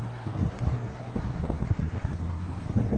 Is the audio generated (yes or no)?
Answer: yes